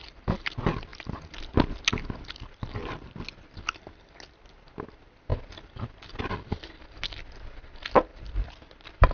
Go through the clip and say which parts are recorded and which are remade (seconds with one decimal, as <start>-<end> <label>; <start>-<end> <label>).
0.0-5.3 recorded; 5.3-6.2 remade; 6.2-8.1 recorded; 8.1-8.6 remade; 8.6-9.1 recorded